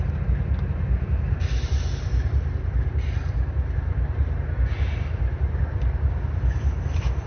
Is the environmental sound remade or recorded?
recorded